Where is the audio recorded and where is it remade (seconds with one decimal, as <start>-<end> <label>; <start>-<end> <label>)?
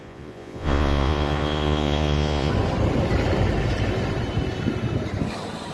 0.0-2.5 remade; 2.5-5.7 recorded